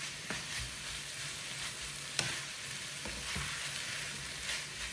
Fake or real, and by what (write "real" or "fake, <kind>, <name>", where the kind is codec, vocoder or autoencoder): real